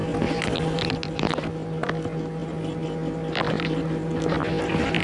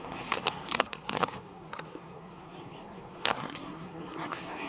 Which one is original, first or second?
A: first